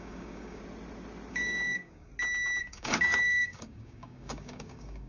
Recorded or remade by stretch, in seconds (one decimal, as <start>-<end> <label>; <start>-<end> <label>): 0.0-0.6 remade; 0.6-1.3 recorded; 1.3-2.1 remade; 2.1-2.6 recorded; 2.6-5.1 remade